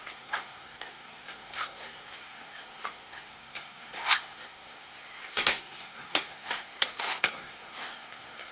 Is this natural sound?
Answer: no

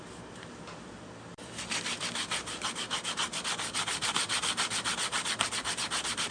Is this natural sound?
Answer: no